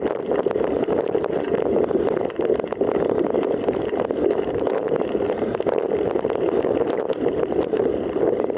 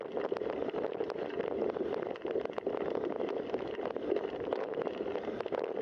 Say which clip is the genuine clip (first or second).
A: second